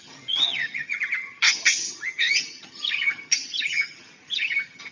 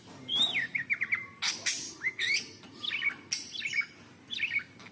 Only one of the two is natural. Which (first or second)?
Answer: second